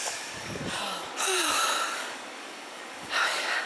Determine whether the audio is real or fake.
fake